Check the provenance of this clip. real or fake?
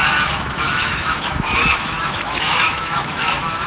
fake